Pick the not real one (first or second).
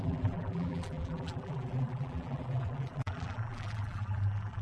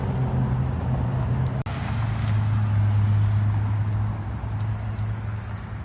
first